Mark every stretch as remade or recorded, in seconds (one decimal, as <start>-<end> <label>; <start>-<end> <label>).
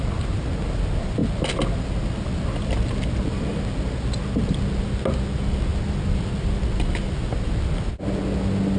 0.0-8.8 recorded